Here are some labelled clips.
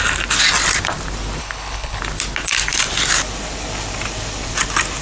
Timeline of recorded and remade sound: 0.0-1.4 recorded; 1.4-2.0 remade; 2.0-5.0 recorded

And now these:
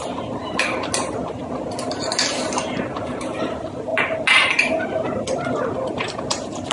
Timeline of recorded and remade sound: 0.0-6.7 recorded

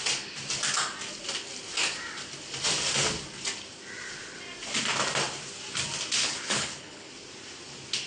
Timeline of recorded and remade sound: 0.0-6.2 recorded; 6.2-7.1 remade; 7.1-8.1 recorded

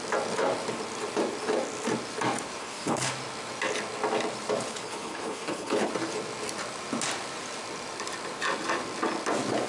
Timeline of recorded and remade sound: 0.0-2.6 recorded; 2.6-3.1 remade; 3.1-4.7 recorded; 4.7-5.9 remade; 5.9-9.7 recorded

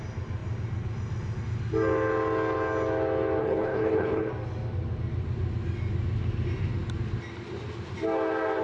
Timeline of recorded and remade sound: 0.0-3.4 recorded; 3.4-4.3 remade; 4.3-8.6 recorded